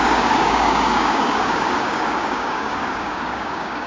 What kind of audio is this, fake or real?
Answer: fake